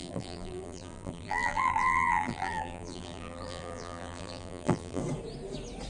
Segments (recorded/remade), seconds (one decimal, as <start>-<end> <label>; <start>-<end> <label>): 0.0-5.0 remade; 5.0-5.9 recorded